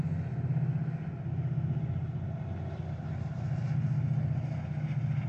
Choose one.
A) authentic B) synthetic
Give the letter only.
A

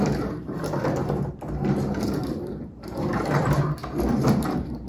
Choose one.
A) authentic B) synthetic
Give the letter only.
B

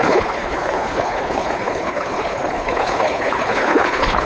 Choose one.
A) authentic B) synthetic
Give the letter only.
B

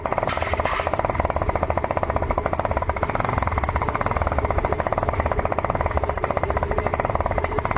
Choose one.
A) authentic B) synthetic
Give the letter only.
A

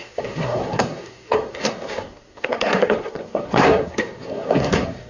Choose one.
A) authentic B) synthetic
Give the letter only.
B